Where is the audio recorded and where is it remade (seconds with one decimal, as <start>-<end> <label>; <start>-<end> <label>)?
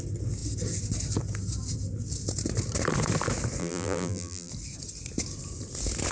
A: 0.0-3.6 recorded; 3.6-4.5 remade; 4.5-6.1 recorded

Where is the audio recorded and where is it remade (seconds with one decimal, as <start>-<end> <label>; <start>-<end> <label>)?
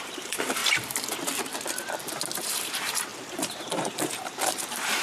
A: 0.0-0.6 remade; 0.6-2.4 recorded; 2.4-5.0 remade